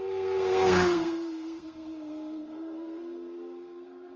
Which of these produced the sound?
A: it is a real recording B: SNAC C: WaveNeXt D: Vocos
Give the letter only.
B